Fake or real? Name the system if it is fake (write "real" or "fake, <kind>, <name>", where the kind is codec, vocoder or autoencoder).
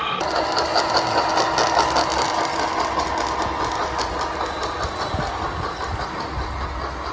real